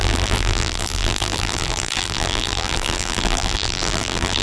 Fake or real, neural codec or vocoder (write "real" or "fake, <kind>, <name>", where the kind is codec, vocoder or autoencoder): fake, vocoder, BigVGAN v2